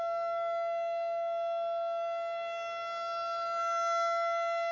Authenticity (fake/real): real